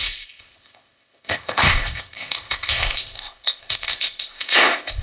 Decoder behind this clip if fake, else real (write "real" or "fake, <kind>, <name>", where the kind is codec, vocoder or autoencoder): fake, codec, ZipCodec